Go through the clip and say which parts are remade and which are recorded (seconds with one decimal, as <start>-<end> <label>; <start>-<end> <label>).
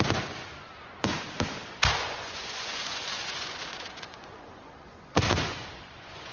0.0-1.1 remade; 1.1-1.9 recorded; 1.9-6.3 remade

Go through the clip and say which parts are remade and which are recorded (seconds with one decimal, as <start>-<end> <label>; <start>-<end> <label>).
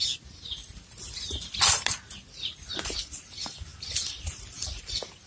0.0-5.3 recorded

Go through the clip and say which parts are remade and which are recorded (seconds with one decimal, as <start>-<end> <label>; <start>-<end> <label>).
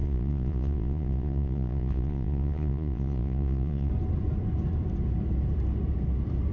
0.0-3.9 remade; 3.9-6.5 recorded